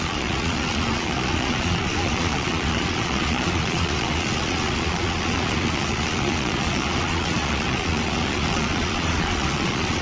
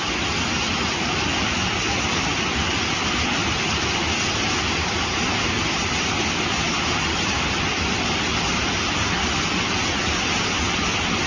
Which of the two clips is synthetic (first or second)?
first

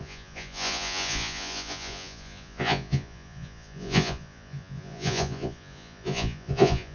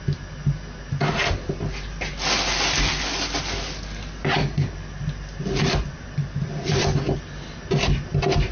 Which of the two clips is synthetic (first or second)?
first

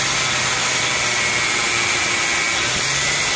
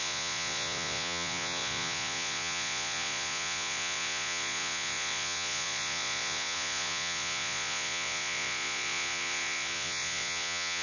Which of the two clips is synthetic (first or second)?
second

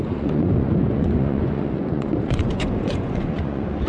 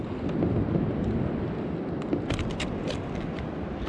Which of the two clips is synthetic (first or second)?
first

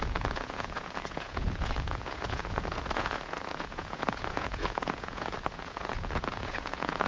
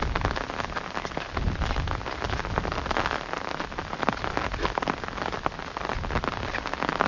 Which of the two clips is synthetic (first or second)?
first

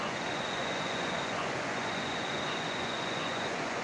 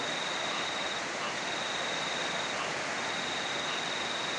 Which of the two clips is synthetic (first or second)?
first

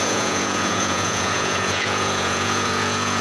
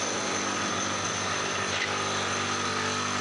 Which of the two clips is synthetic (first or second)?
first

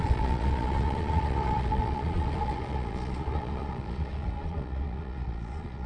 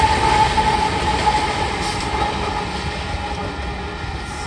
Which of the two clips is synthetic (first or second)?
first